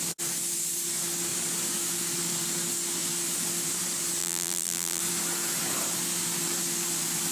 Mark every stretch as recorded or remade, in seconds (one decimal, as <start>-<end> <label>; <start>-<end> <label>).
0.0-4.2 recorded; 4.2-5.0 remade; 5.0-7.3 recorded